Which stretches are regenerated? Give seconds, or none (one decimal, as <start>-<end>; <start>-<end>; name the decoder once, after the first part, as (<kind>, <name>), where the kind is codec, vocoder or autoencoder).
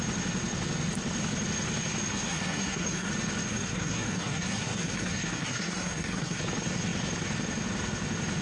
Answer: 2.1-3.1 (codec, SNAC); 3.5-6.4